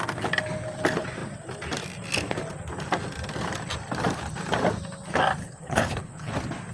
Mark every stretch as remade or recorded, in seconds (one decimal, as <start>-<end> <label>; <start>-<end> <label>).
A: 0.0-5.4 recorded; 5.4-6.3 remade; 6.3-6.7 recorded